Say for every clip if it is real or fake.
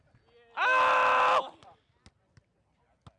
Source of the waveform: real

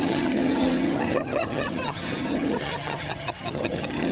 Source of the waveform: fake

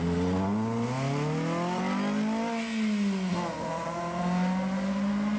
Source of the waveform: real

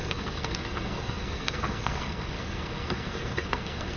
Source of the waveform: fake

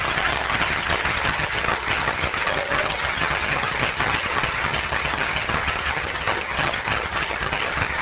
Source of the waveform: fake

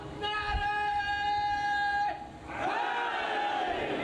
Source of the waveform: real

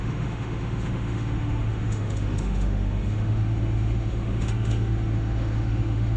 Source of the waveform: fake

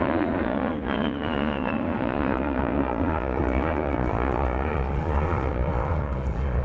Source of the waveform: fake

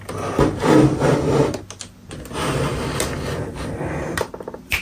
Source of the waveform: real